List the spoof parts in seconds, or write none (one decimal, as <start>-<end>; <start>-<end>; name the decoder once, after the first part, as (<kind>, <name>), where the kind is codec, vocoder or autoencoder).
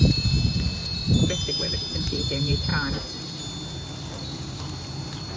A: 0.0-2.7 (vocoder, BigVGAN v2)